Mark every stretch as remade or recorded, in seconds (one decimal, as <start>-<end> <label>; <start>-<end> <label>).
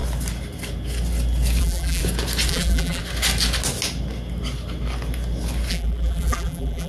0.0-1.6 recorded; 1.6-2.0 remade; 2.0-2.5 recorded; 2.5-3.0 remade; 3.0-5.7 recorded; 5.7-6.9 remade